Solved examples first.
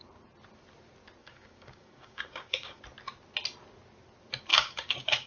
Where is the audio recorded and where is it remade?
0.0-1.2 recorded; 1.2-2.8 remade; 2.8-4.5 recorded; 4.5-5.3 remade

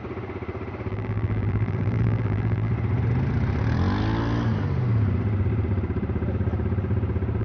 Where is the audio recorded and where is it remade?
0.0-0.9 recorded; 0.9-2.7 remade; 2.7-7.4 recorded

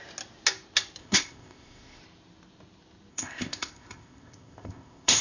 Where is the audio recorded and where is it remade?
0.0-1.0 recorded; 1.0-2.0 remade; 2.0-3.1 recorded; 3.1-5.2 remade

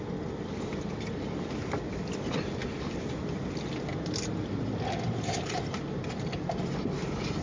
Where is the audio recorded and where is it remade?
0.0-7.4 recorded

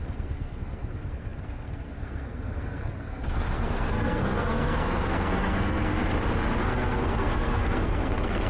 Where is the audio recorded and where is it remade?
0.0-5.9 remade; 5.9-6.6 recorded; 6.6-8.5 remade